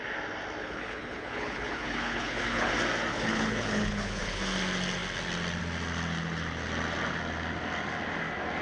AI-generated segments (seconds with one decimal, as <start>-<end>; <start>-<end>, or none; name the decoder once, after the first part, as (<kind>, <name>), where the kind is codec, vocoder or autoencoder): 0.6-2.7 (codec, HILCodec); 3.1-4.4